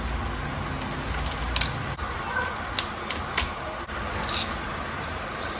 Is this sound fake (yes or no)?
no